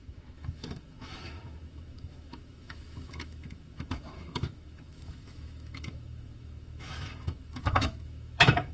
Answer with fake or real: fake